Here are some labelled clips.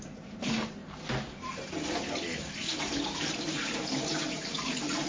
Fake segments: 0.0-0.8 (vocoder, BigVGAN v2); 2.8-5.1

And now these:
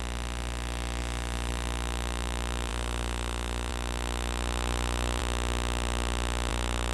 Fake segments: 1.0-1.5 (vocoder, BigVGAN v2); 2.7-3.7

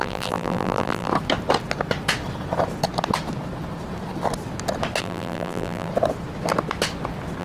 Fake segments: 0.0-1.1 (vocoder, BigVGAN v2); 5.0-5.9